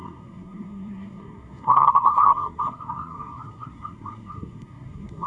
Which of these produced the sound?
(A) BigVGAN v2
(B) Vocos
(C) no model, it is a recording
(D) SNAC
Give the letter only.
D